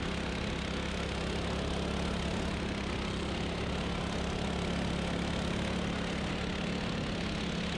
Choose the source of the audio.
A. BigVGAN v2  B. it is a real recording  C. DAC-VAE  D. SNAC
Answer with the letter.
B